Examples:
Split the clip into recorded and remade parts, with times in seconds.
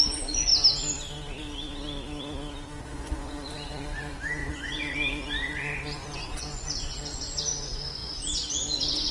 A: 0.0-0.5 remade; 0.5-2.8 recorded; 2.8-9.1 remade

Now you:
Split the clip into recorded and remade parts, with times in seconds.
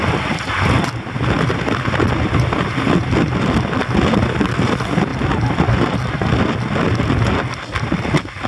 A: 0.0-8.5 recorded